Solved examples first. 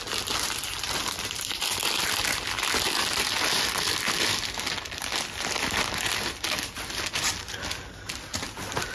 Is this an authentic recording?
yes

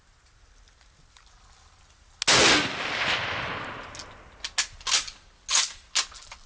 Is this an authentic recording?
yes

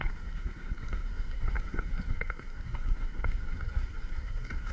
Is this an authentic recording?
no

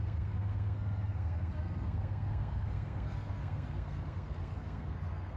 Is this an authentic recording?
no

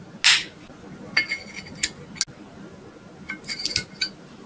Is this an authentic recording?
yes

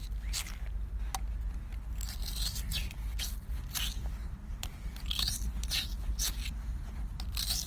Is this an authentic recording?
yes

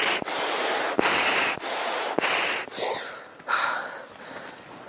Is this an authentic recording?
yes